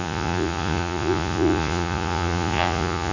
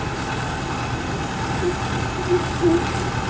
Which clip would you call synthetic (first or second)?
first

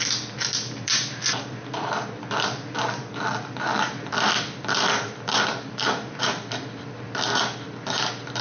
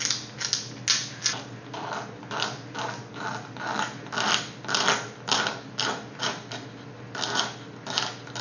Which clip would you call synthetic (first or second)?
first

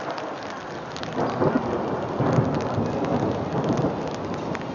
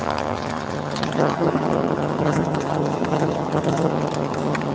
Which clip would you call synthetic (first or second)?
second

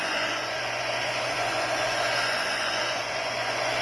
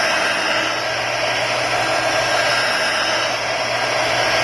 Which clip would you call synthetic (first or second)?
first